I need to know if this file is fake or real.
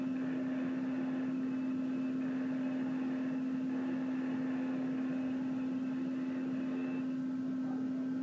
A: real